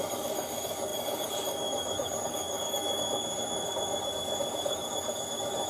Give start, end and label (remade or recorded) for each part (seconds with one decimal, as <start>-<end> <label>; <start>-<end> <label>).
0.0-5.7 remade